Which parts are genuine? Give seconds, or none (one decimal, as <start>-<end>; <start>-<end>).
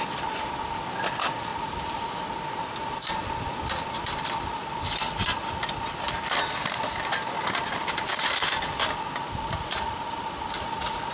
0.0-11.1